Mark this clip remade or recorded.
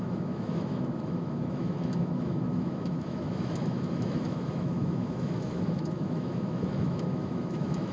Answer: remade